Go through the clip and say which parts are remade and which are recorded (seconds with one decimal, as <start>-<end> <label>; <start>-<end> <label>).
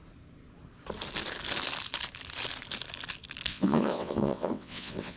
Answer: 0.0-3.5 recorded; 3.5-5.2 remade